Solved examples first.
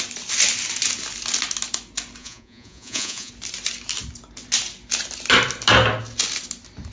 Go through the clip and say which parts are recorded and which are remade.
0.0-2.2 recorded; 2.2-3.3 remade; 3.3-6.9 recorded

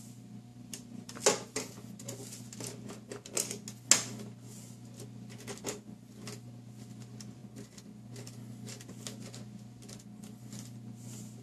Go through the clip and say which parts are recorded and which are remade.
0.0-11.4 recorded